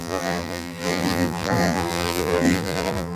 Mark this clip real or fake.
fake